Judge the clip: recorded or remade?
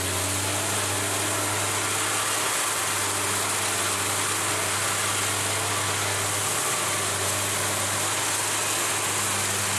recorded